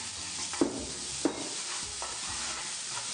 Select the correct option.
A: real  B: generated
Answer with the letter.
A